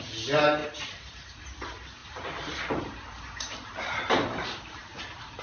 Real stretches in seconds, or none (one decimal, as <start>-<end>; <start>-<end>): 0.0-0.6; 1.4-2.0